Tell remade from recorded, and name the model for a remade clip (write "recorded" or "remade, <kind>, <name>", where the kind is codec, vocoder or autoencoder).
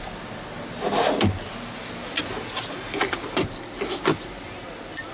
recorded